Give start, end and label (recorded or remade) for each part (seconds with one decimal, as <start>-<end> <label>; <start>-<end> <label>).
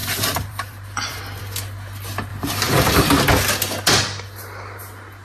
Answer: 0.0-1.4 remade; 1.4-2.3 recorded; 2.3-3.1 remade; 3.1-5.2 recorded